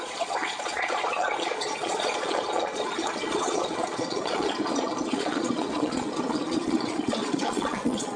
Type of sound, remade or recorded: remade